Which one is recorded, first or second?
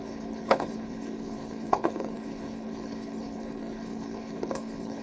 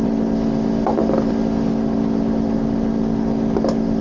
second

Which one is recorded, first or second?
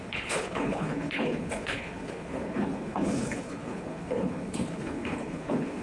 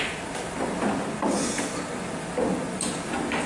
second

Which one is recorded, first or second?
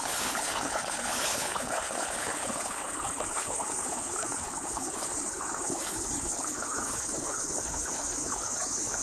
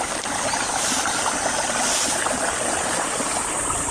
second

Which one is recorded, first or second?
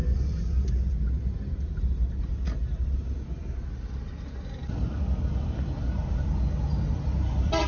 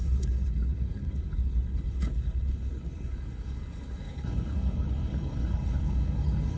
first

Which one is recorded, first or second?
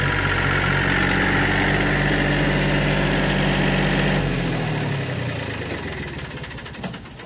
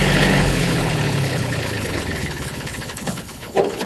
first